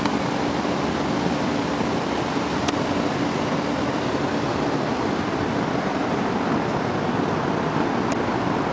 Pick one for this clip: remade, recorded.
recorded